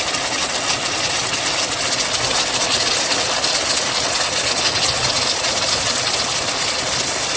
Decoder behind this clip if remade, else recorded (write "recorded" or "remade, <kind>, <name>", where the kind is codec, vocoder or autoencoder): recorded